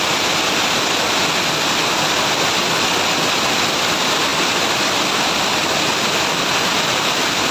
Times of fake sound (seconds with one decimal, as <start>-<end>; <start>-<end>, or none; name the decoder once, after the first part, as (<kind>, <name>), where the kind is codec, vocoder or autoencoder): none